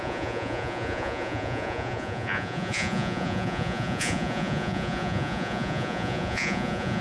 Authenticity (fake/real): fake